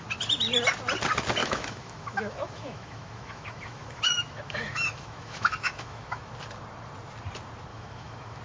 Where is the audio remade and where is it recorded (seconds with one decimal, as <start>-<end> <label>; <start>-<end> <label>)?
0.0-1.4 recorded; 1.4-6.3 remade; 6.3-7.7 recorded; 7.7-8.4 remade